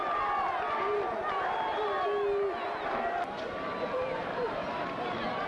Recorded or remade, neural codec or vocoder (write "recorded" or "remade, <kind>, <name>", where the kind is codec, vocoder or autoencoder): recorded